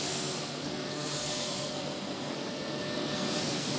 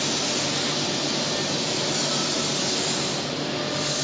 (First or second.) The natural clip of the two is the second